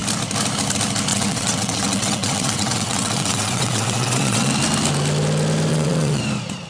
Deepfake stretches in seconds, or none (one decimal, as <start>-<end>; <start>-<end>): 1.1-4.5; 5.7-6.2